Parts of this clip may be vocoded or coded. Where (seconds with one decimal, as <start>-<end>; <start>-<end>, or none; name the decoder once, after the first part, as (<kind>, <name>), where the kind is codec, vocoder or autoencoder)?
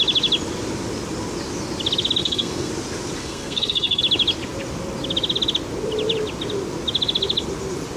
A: 2.2-2.7 (codec, SNAC); 3.2-4.0